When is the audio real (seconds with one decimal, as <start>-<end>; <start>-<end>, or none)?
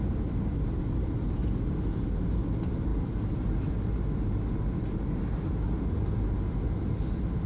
0.0-7.5